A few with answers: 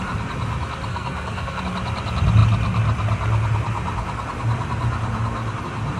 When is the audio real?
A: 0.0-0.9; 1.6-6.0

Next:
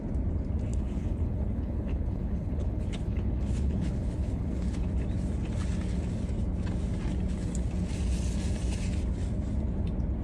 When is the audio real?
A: 0.0-0.7; 4.9-10.2

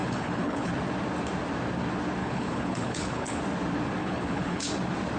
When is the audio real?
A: 0.7-2.2; 3.4-4.0; 4.7-5.2

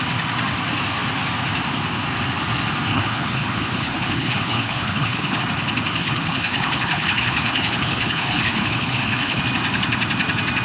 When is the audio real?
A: 0.0-2.9; 5.4-6.0; 9.4-10.6

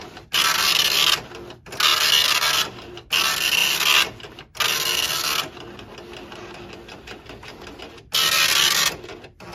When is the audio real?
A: 0.0-9.5

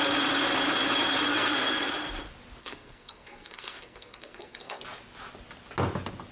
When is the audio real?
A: 0.0-1.3; 1.9-2.6; 4.8-6.3